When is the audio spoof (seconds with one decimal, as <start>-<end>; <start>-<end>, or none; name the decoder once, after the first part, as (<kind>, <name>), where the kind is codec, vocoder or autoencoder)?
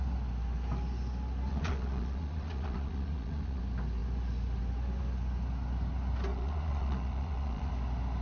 1.5-3.6 (vocoder, Vocos); 6.3-7.7